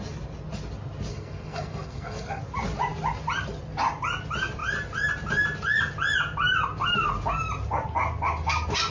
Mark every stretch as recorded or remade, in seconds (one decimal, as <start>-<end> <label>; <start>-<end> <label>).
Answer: 0.0-1.1 recorded; 1.1-2.4 remade; 2.4-8.9 recorded